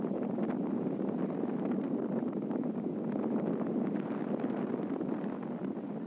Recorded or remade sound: recorded